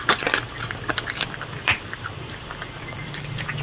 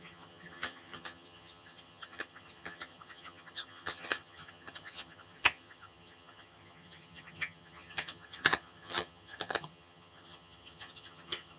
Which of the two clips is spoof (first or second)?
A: second